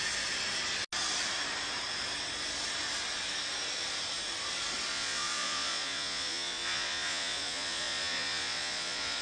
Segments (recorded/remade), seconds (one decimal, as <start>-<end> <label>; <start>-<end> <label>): 0.0-4.9 recorded; 4.9-9.2 remade